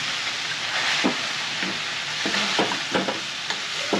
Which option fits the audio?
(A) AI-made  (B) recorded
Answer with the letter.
B